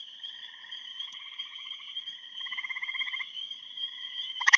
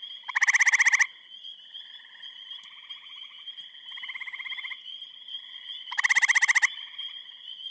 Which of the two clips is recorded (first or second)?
second